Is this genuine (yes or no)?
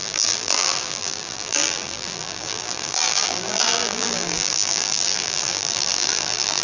no